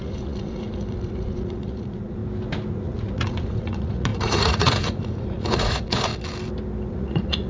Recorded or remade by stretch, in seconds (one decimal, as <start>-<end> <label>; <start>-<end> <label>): 0.0-2.2 remade; 2.2-2.7 recorded; 2.7-6.1 remade; 6.1-6.9 recorded; 6.9-7.5 remade